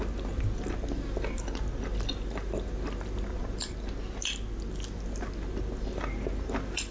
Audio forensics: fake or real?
real